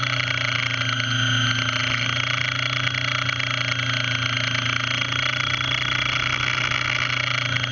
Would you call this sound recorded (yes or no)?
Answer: yes